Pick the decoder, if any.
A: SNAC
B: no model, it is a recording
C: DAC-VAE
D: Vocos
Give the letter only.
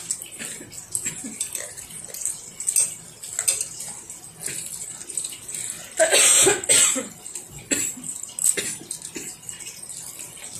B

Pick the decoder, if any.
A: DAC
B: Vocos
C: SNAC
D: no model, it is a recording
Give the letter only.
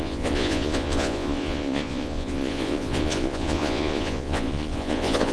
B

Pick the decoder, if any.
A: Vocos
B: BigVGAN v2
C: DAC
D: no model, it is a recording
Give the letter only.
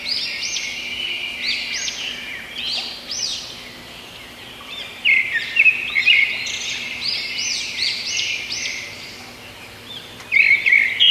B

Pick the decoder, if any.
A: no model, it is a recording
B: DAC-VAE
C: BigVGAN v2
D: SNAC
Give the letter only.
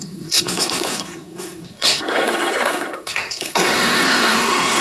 D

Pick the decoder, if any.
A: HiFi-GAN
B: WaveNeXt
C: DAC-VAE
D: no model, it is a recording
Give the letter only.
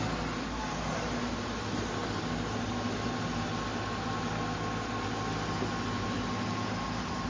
D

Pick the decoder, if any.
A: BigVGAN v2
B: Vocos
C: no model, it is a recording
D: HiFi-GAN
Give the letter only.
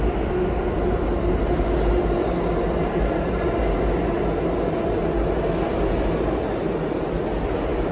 C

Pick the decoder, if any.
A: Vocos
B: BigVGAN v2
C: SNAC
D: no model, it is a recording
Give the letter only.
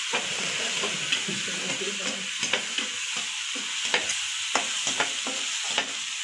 B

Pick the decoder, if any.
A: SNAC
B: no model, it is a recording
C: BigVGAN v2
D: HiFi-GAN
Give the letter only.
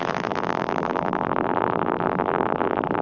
C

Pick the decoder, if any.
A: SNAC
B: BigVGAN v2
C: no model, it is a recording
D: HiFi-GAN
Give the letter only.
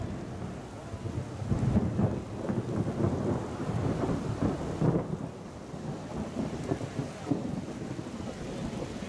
C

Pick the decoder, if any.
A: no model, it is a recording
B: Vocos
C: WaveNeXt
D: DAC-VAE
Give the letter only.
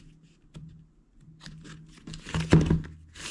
A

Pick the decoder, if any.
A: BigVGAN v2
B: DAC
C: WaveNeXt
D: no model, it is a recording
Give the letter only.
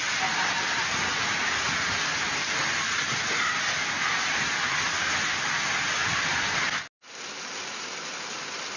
D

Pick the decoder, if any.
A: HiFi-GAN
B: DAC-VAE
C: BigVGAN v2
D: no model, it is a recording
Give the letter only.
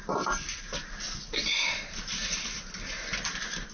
D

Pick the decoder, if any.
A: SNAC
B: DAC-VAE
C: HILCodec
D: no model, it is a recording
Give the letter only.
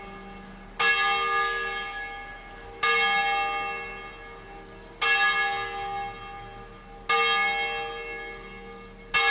D